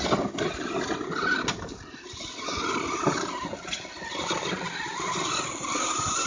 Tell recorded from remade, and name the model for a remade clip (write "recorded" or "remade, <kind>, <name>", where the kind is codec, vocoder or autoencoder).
recorded